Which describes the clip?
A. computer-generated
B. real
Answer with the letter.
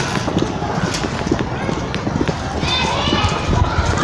B